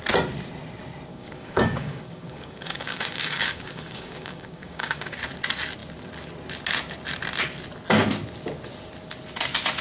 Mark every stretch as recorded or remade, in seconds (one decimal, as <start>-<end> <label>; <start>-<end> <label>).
0.0-1.1 recorded; 1.1-5.2 remade; 5.2-9.8 recorded